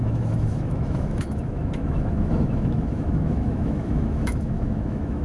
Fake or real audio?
fake